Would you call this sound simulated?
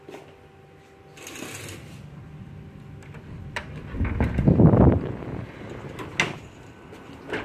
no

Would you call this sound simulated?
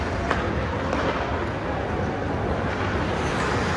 no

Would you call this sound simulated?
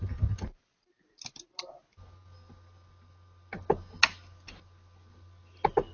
no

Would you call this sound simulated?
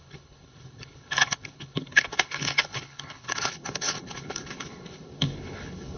yes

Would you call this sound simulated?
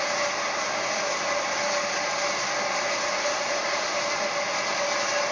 no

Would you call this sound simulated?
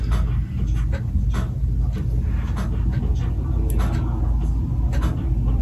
no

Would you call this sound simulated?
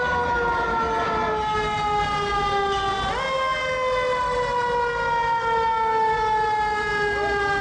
no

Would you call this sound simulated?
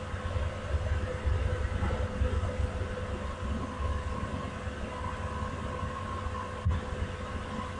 no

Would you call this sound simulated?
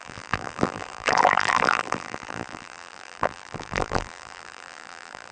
yes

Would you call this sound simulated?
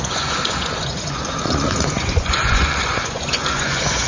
yes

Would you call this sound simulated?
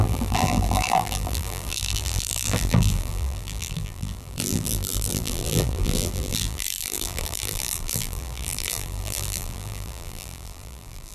yes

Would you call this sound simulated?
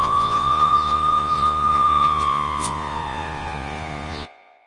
yes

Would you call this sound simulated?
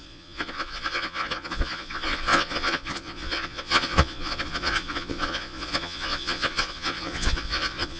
yes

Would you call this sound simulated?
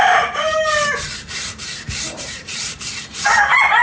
yes